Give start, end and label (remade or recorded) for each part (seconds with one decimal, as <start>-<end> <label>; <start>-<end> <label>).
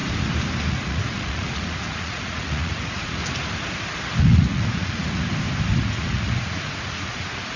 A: 0.0-0.7 recorded; 0.7-3.2 remade; 3.2-4.2 recorded; 4.2-5.3 remade; 5.3-5.8 recorded; 5.8-7.6 remade